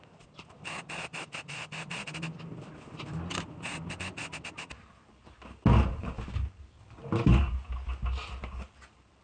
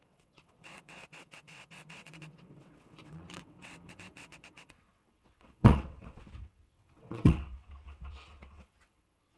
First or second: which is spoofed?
second